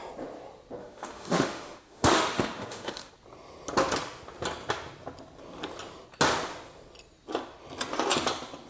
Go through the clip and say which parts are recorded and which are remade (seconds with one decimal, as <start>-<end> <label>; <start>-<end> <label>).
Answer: 0.0-0.8 recorded; 0.8-3.1 remade; 3.1-8.7 recorded